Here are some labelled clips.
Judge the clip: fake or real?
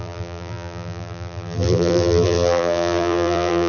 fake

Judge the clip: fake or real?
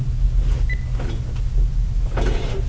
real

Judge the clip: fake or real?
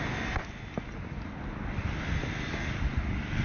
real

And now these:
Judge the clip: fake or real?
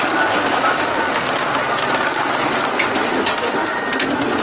real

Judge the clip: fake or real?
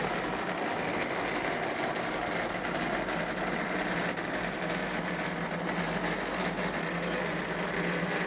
real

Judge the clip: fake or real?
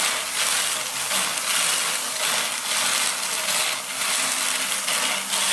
real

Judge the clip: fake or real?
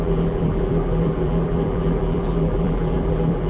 fake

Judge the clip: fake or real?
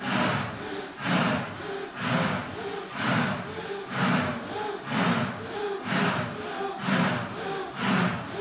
real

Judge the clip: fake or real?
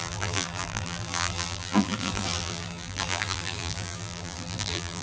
fake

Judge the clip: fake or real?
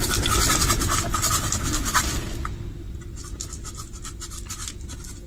real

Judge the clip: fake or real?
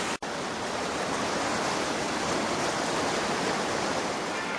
real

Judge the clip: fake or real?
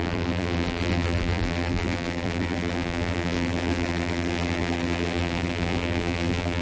fake